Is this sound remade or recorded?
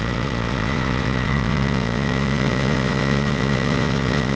remade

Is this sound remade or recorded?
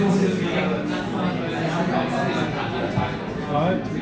recorded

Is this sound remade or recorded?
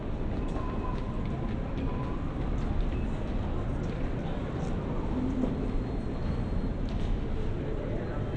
recorded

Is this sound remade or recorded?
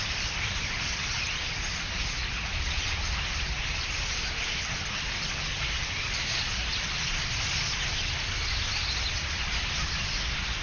recorded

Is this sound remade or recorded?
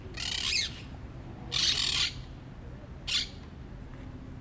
recorded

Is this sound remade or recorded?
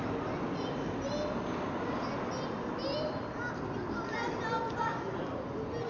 recorded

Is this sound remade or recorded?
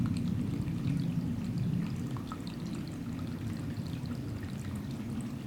recorded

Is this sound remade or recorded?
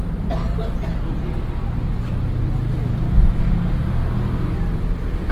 recorded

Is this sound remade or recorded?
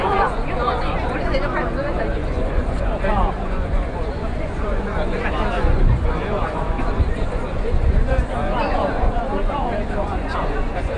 remade